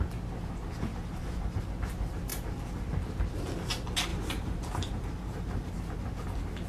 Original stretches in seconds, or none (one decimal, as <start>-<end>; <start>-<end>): 0.0-0.9; 1.6-4.1; 5.7-6.7